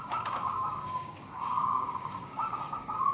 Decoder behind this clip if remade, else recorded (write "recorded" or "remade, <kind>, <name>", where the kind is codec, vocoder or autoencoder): remade, codec, DAC